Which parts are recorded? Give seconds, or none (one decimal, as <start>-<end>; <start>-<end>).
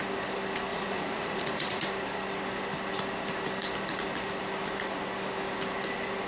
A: 0.0-0.7; 1.8-6.3